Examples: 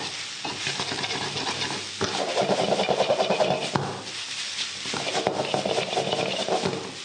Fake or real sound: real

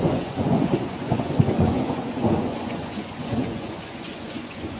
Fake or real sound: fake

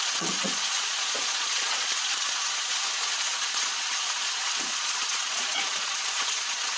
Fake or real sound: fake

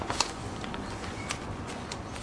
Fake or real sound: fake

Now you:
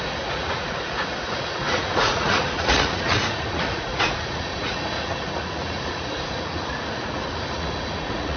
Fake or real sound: fake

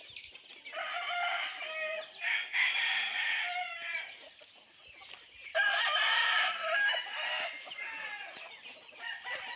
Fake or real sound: real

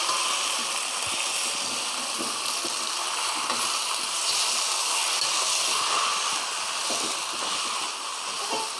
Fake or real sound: real